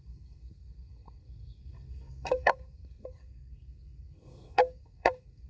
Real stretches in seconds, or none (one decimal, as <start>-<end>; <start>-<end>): none